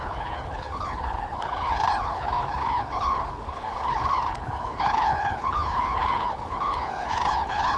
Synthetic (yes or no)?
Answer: yes